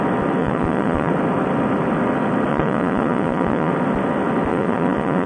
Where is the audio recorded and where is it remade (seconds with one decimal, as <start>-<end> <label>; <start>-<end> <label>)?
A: 0.0-0.4 recorded; 0.4-1.1 remade; 1.1-2.5 recorded; 2.5-3.7 remade; 3.7-4.5 recorded; 4.5-5.3 remade